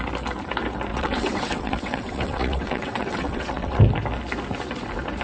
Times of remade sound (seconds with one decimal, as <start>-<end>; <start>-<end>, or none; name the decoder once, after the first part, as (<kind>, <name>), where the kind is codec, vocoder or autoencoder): 0.9-3.8 (vocoder, WaveNeXt)